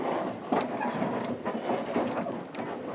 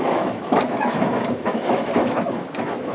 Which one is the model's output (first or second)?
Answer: second